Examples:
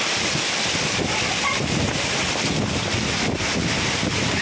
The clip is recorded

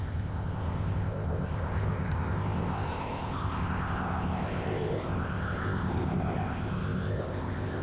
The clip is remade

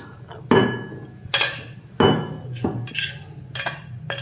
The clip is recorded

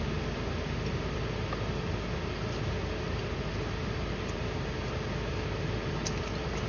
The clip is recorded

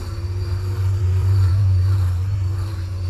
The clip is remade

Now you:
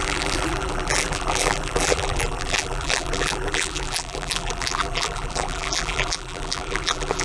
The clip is remade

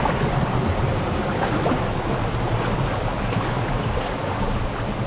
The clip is recorded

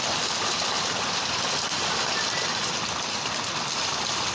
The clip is recorded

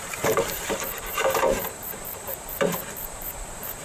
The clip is remade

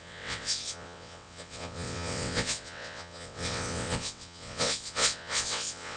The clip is remade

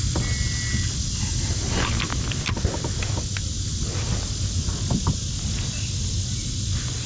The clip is recorded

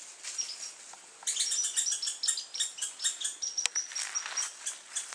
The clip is recorded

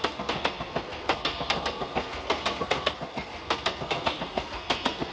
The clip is remade